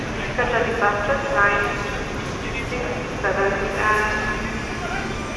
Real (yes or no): yes